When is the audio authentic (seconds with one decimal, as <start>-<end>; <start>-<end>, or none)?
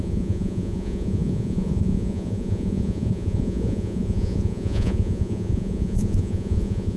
none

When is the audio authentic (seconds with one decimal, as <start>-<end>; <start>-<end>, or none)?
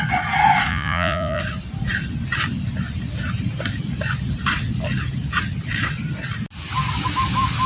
0.0-0.7; 1.4-7.7